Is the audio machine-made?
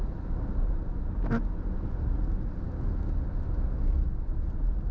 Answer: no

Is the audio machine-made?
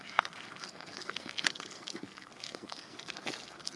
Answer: yes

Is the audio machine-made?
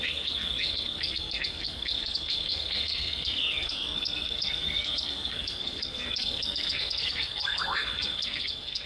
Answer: yes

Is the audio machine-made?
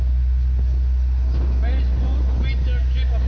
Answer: no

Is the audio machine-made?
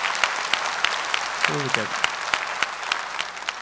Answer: no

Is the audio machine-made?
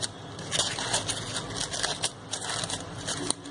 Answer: no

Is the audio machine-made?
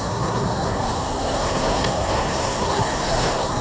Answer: yes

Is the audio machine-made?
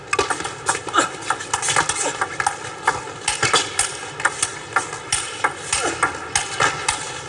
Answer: no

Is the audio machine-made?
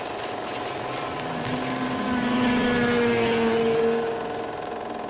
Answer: no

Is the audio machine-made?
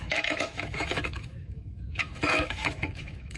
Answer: yes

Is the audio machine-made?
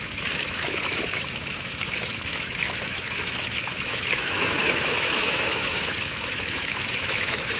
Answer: yes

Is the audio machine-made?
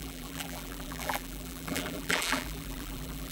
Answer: yes